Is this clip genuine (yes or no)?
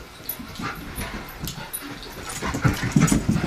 yes